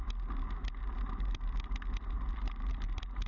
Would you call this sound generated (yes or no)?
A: no